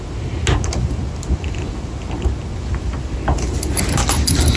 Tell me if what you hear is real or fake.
real